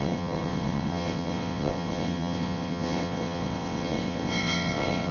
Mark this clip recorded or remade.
remade